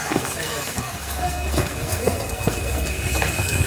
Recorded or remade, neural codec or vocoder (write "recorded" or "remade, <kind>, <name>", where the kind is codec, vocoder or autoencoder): remade, codec, SNAC